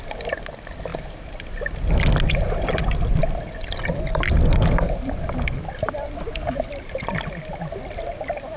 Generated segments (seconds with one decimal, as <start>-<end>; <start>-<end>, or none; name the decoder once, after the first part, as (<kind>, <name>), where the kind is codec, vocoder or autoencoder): none